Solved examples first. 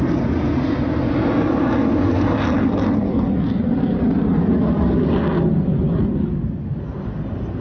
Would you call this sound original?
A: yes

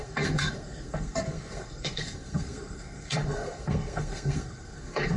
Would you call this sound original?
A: no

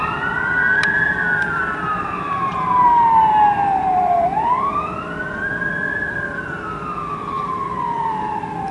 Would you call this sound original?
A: no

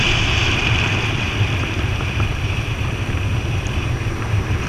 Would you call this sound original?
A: no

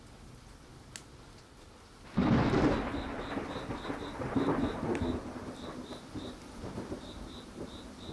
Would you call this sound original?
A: yes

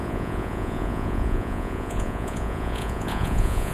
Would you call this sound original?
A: no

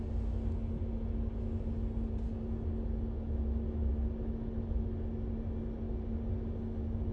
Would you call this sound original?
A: yes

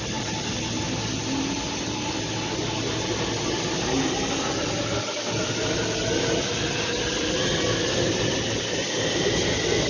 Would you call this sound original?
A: yes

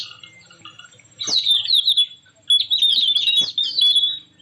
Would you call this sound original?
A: yes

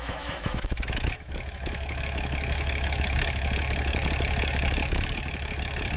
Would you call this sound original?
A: no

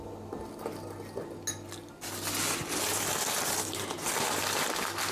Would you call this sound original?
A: yes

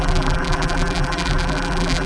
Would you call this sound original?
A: no